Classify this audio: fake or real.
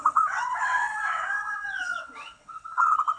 fake